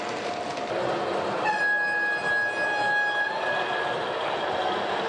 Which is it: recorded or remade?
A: recorded